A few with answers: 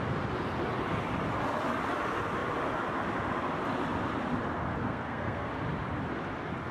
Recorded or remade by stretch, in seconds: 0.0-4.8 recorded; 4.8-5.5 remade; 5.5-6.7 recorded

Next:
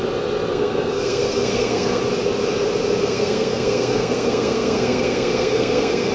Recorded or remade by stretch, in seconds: 0.0-0.5 recorded; 0.5-2.0 remade; 2.0-3.0 recorded; 3.0-6.1 remade

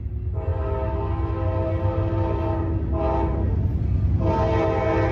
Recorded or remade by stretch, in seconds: 0.0-5.1 recorded

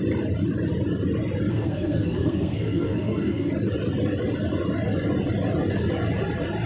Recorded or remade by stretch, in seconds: 0.0-1.5 recorded; 1.5-3.5 remade; 3.5-6.7 recorded

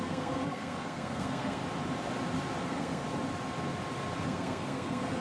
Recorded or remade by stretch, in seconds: 0.0-1.6 remade; 1.6-2.6 recorded; 2.6-3.0 remade; 3.0-4.2 recorded; 4.2-5.2 remade

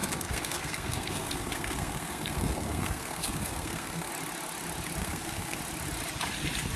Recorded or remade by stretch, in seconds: 0.0-4.1 remade; 4.1-5.0 recorded; 5.0-5.6 remade; 5.6-6.8 recorded

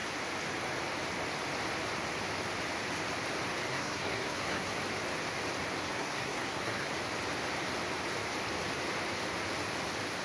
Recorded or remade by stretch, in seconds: 0.0-3.7 recorded; 3.7-4.8 remade; 4.8-5.8 recorded; 5.8-6.9 remade; 6.9-10.2 recorded